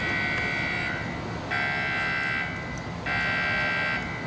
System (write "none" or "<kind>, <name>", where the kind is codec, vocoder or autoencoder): none